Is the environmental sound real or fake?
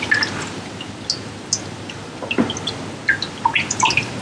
real